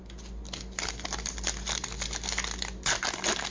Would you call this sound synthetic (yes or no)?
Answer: no